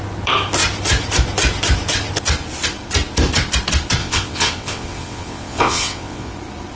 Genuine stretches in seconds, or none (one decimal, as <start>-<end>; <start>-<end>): 0.0-4.0; 6.3-6.8